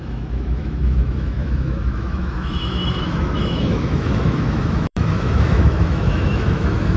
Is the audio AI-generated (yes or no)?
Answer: yes